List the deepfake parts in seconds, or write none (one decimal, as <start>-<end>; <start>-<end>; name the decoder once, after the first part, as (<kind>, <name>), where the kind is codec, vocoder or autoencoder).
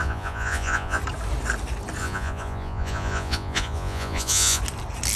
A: 0.0-1.0 (vocoder, Vocos); 2.0-4.6